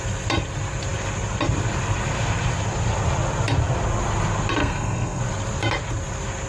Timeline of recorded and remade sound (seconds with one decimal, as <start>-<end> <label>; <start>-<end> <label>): 0.0-4.6 recorded; 4.6-5.2 remade; 5.2-6.5 recorded